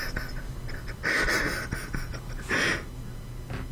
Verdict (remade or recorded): recorded